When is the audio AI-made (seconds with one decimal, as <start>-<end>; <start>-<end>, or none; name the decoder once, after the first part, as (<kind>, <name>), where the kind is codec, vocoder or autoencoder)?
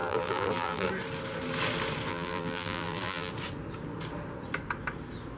0.0-0.9 (vocoder, BigVGAN v2); 2.1-3.3